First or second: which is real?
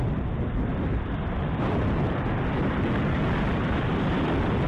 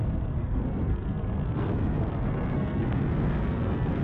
first